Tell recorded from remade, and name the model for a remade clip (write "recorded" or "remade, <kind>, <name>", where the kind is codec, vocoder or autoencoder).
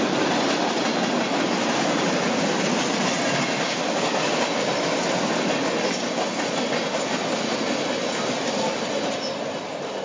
recorded